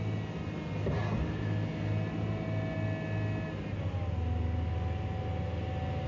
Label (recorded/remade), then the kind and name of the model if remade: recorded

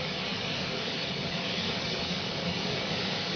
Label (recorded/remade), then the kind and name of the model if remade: remade, codec, DAC